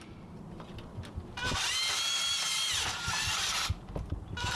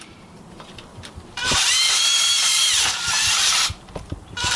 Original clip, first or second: first